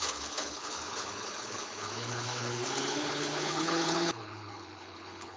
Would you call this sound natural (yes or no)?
no